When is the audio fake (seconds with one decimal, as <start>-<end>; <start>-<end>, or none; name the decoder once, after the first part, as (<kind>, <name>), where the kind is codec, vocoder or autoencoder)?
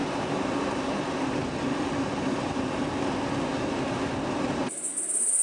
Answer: none